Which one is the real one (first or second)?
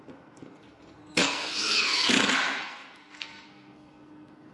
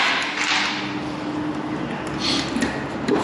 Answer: second